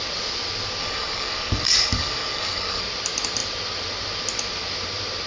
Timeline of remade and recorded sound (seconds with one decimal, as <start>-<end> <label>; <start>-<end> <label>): 0.0-0.8 recorded; 0.8-2.8 remade; 2.8-5.3 recorded